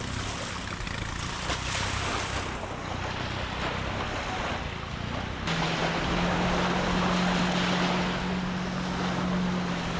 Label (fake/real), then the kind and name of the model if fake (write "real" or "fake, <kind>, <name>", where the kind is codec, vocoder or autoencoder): real